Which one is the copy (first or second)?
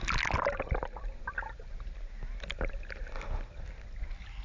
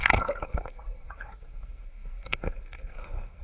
second